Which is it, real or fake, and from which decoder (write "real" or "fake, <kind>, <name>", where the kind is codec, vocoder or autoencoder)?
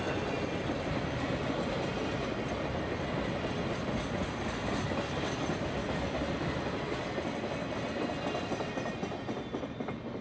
real